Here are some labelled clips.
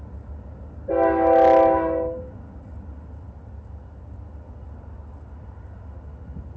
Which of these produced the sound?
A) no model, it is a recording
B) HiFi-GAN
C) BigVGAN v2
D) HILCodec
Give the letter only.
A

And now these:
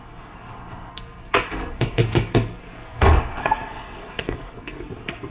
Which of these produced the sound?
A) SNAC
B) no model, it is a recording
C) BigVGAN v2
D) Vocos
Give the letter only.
A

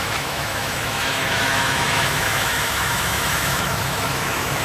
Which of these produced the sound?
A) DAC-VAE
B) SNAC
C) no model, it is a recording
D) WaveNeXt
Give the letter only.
A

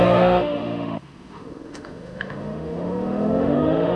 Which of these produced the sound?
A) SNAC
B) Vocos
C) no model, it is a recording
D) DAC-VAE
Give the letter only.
D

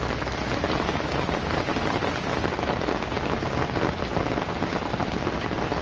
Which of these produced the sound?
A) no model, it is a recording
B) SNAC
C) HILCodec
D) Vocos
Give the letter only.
A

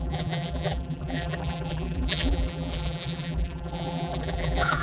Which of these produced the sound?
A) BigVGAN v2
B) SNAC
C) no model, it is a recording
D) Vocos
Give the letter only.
A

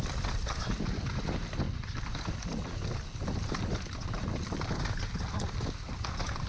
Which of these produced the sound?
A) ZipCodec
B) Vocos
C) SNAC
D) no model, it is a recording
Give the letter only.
D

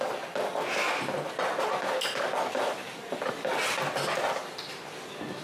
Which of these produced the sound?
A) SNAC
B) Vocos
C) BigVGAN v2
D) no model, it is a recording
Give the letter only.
D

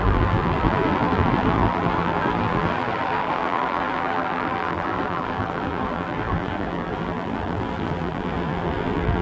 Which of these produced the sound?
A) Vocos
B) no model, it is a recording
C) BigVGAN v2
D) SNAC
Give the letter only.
C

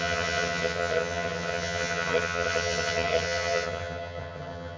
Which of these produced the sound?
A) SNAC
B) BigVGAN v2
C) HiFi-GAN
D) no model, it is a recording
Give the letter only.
C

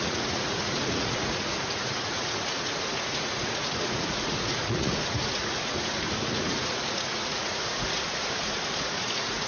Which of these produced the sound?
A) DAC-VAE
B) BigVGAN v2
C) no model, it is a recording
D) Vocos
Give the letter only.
D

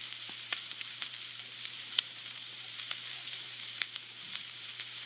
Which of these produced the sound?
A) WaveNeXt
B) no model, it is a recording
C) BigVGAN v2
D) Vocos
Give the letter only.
C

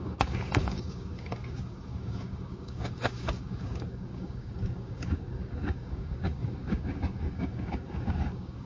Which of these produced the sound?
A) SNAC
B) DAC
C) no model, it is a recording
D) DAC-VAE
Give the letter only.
B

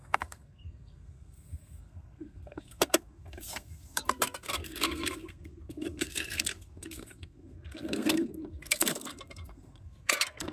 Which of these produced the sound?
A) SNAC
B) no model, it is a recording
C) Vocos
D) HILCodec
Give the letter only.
A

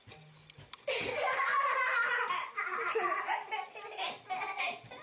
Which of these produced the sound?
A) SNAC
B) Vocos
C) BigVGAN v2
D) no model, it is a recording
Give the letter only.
D